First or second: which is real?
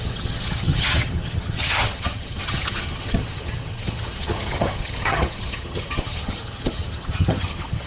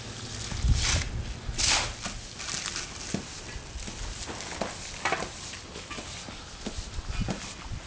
second